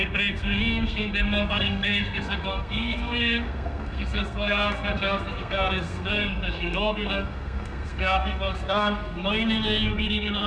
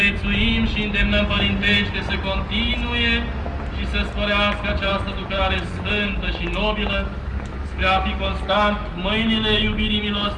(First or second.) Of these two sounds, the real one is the second